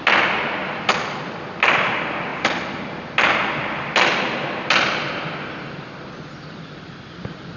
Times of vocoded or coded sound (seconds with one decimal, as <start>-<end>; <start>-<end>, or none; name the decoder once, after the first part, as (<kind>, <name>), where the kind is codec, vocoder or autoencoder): none